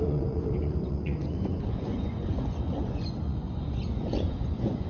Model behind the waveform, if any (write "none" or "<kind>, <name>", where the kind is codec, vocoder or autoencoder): vocoder, Vocos